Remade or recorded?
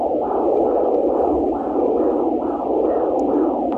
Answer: remade